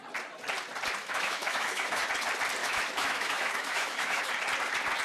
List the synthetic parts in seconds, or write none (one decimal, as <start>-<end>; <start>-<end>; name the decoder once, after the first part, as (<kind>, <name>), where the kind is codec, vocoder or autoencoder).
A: 1.0-2.0 (autoencoder, DAC-VAE); 2.6-4.3